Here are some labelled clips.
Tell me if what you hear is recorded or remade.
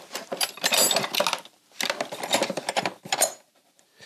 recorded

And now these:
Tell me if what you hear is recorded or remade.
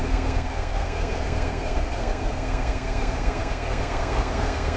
remade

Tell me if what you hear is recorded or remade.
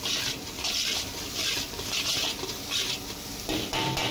recorded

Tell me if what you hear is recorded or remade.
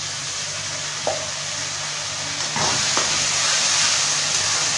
recorded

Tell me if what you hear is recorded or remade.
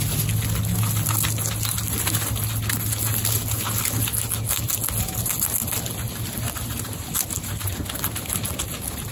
recorded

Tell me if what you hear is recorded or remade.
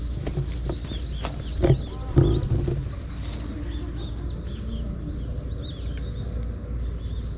recorded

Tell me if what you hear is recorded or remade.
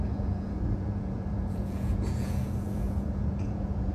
remade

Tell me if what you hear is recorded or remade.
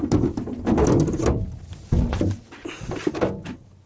recorded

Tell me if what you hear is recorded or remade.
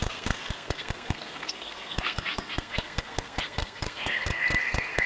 remade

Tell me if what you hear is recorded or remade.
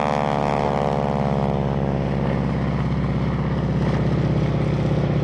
recorded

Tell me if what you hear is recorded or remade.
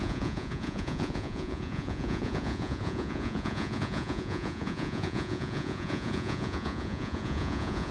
remade